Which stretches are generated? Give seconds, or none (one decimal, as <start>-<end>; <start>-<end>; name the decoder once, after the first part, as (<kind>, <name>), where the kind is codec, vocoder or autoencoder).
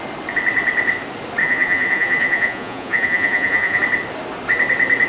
1.4-3.8 (vocoder, Vocos)